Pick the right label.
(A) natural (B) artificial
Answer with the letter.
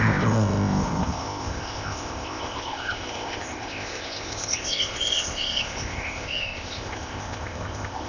B